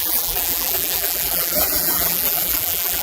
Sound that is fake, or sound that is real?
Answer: fake